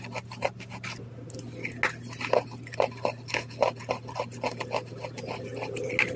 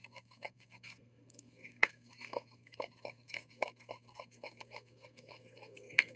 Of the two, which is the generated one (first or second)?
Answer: second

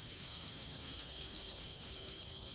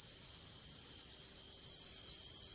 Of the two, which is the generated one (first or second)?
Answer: first